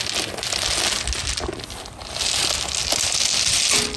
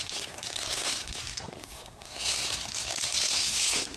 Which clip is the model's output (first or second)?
second